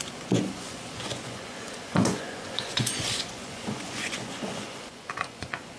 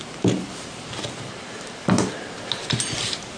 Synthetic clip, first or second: first